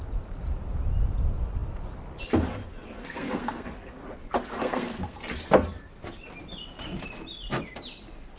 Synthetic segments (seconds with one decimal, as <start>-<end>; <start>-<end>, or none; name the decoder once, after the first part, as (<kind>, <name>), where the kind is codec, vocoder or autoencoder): 3.0-3.7 (codec, SNAC); 4.6-5.2